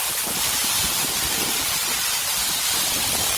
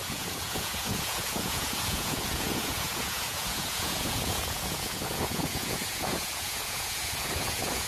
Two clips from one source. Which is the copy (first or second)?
second